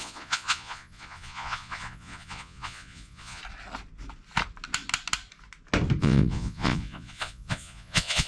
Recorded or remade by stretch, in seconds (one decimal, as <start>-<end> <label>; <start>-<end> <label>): 0.0-3.4 remade; 3.4-6.0 recorded; 6.0-8.3 remade